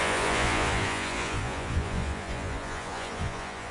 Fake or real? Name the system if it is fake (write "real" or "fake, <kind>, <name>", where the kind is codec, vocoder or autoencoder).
fake, vocoder, Vocos